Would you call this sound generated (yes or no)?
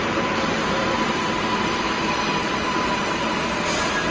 no